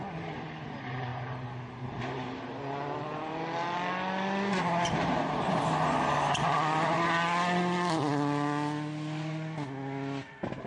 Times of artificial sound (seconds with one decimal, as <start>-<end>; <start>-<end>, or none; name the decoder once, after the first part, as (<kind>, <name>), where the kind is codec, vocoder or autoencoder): none